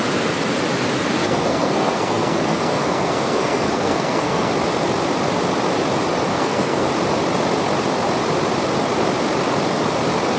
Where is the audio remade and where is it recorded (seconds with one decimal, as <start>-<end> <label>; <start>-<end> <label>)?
0.0-1.2 recorded; 1.2-4.5 remade; 4.5-6.3 recorded; 6.3-6.9 remade; 6.9-10.4 recorded